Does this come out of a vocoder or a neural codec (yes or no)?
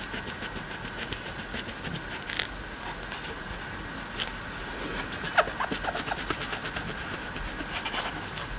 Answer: no